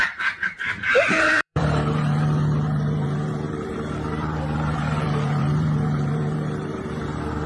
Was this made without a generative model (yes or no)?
no